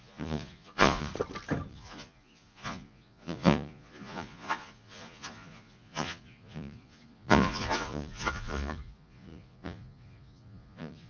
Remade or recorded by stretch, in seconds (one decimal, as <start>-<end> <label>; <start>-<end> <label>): 0.0-1.1 remade; 1.1-1.7 recorded; 1.7-11.1 remade